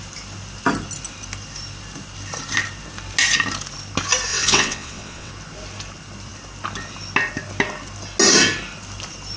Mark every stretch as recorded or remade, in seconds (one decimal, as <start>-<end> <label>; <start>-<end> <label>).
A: 0.0-4.3 recorded; 4.3-5.3 remade; 5.3-9.4 recorded